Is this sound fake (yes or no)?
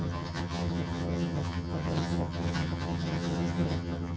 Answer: yes